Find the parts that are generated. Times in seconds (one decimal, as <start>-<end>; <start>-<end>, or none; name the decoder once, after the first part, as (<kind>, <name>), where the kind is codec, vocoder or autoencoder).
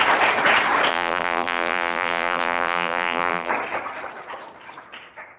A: 0.9-3.5 (vocoder, BigVGAN v2)